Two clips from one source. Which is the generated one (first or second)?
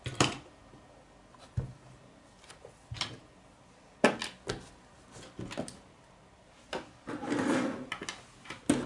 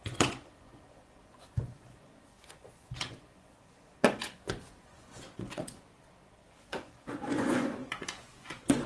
second